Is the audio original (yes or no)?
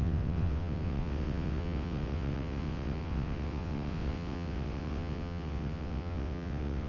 no